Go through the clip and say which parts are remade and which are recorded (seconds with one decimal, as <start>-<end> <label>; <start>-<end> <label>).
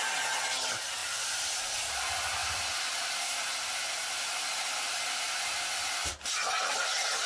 0.0-7.3 recorded